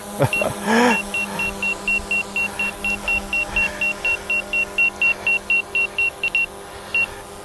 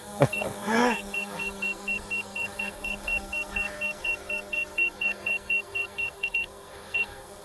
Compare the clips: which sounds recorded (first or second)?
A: first